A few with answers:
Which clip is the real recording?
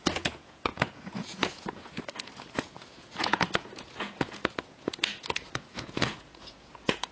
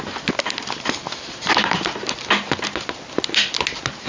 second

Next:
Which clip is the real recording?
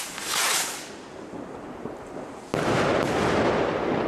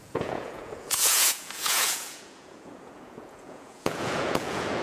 first